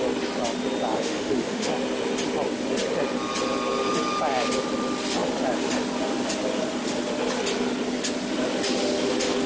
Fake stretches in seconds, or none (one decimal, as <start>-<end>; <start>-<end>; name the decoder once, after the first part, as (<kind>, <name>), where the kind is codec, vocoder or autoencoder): 0.9-1.7 (autoencoder, DAC-VAE)

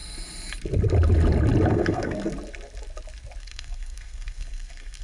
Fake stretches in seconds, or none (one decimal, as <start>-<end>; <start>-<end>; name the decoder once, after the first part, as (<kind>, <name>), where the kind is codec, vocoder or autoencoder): 1.7-2.3 (codec, SNAC); 3.4-5.0

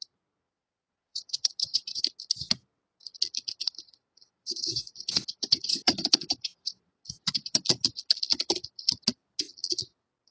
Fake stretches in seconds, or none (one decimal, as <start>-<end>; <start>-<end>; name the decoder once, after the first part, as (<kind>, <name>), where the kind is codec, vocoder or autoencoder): 0.4-2.0 (vocoder, Vocos); 3.6-7.7

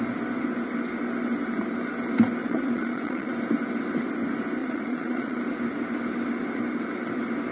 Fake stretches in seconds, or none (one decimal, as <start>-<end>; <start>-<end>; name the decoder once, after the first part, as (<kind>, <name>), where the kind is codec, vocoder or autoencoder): 2.4-3.3 (vocoder, Vocos); 4.6-5.4

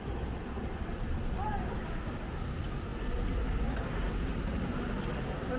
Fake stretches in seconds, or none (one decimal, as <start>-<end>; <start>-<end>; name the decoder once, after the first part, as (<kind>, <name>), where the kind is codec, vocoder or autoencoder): none

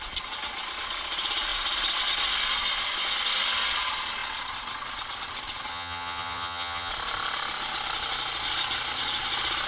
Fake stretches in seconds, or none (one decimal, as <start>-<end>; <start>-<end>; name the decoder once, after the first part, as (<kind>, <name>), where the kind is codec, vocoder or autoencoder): 5.7-6.9 (vocoder, HiFi-GAN)

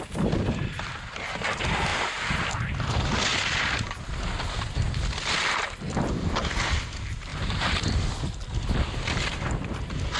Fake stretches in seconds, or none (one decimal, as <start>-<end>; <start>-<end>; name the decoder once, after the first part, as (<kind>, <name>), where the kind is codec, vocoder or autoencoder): 7.3-8.1 (vocoder, BigVGAN v2)